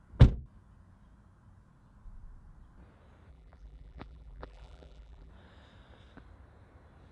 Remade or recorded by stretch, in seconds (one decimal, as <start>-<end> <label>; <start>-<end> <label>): 0.0-3.3 recorded; 3.3-5.3 remade; 5.3-7.1 recorded